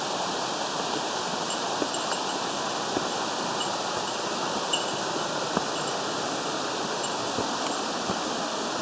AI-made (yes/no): no